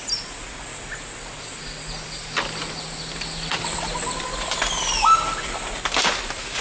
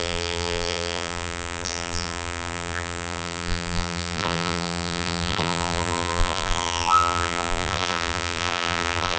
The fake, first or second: second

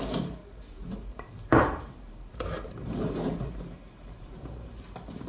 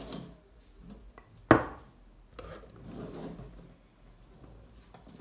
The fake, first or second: first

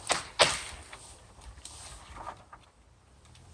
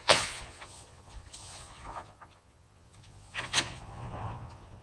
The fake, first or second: second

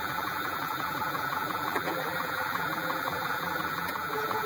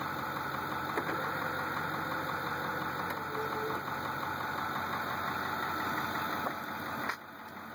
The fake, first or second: first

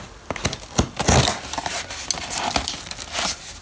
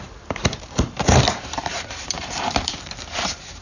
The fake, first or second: second